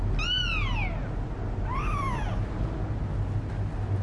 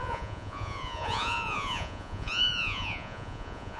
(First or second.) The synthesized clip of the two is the second